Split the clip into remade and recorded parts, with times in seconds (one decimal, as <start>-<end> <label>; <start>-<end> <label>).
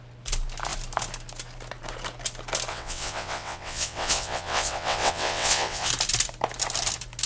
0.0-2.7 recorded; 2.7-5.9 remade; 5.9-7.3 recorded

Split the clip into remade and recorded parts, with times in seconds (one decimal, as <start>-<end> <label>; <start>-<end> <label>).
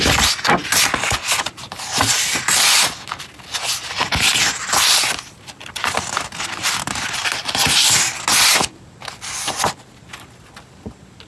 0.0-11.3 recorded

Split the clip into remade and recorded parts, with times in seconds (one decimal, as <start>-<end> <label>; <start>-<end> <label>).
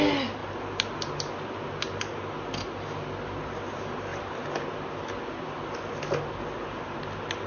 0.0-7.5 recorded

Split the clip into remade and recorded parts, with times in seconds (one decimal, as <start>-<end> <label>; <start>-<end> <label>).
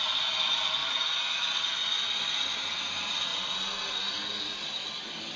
0.0-5.4 recorded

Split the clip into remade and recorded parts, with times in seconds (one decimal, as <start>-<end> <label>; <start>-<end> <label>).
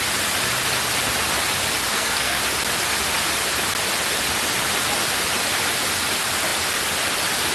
0.0-1.9 recorded; 1.9-2.4 remade; 2.4-7.5 recorded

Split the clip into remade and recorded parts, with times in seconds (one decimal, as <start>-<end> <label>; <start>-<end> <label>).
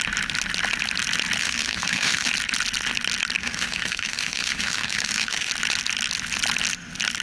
0.0-1.4 recorded; 1.4-2.3 remade; 2.3-3.4 recorded; 3.4-5.5 remade; 5.5-7.2 recorded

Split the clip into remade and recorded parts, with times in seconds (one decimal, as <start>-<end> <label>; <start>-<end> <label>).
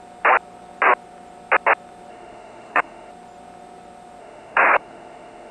0.0-2.1 recorded; 2.1-3.1 remade; 3.1-4.2 recorded; 4.2-5.5 remade